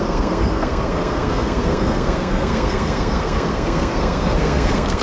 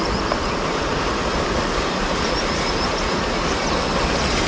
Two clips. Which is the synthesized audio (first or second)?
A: first